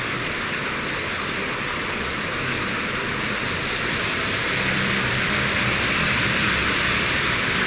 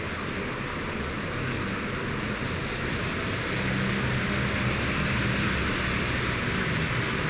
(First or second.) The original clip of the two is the second